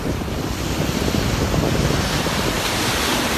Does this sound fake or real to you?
real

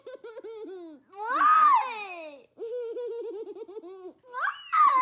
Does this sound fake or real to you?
real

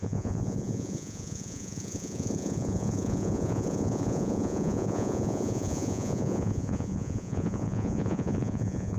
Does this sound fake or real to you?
fake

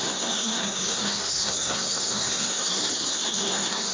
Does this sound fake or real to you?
fake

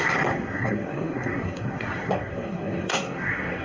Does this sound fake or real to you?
fake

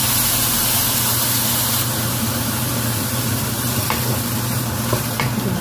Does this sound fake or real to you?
fake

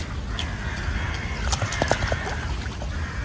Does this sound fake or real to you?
real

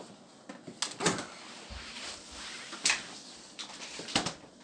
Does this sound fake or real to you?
real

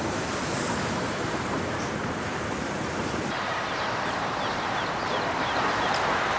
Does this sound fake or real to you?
fake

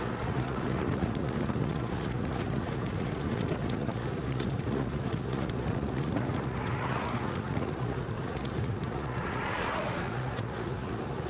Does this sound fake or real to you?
fake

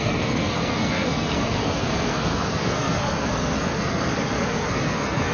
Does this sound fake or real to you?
fake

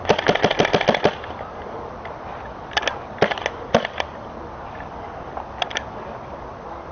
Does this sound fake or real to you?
real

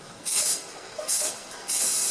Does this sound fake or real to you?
fake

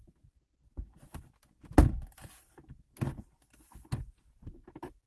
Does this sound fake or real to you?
real